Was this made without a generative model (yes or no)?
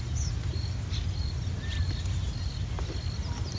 yes